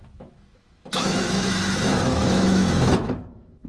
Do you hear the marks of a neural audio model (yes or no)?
yes